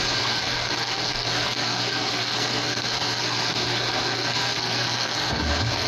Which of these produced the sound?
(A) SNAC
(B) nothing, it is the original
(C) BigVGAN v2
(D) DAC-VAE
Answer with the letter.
A